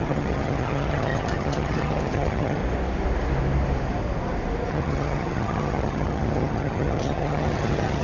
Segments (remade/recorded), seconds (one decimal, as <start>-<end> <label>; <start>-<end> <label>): 0.0-2.6 remade; 2.6-4.7 recorded; 4.7-8.0 remade